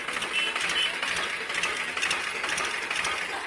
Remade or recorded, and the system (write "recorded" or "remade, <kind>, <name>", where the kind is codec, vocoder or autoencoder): recorded